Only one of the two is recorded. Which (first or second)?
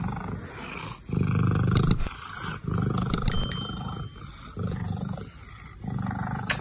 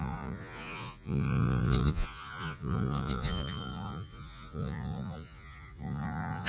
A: first